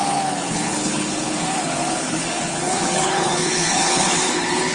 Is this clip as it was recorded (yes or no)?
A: no